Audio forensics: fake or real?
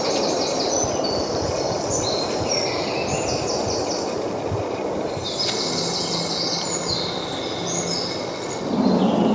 real